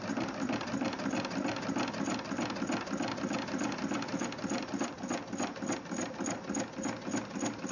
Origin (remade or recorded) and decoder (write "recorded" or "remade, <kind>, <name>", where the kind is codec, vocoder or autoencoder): recorded